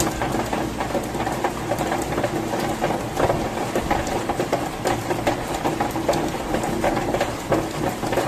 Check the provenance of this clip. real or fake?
real